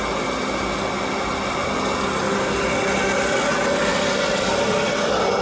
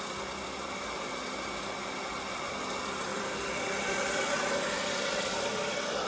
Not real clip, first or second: second